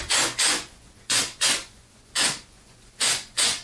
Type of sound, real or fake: fake